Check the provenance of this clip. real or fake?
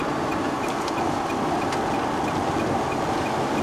real